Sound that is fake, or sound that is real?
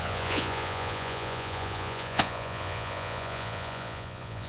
fake